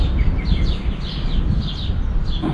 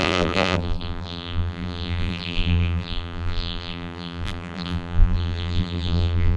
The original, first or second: first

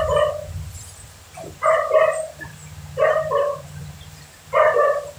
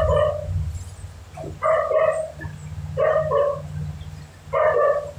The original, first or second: second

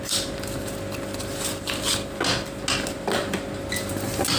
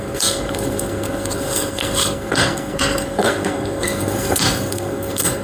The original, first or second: first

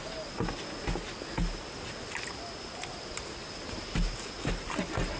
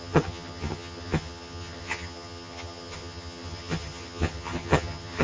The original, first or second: first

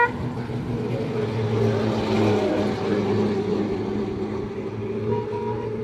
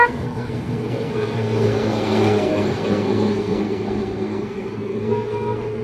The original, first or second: first